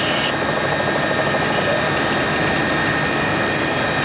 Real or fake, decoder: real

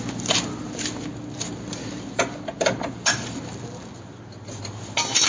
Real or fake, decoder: real